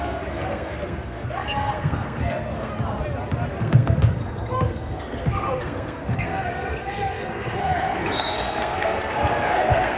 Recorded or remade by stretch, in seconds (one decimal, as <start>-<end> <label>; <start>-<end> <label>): 0.0-2.7 remade; 2.7-3.6 recorded; 3.6-10.0 remade